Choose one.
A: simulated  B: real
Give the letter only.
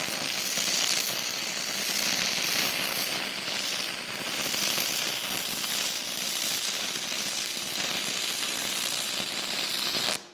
B